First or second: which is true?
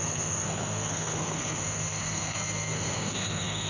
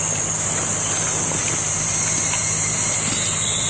second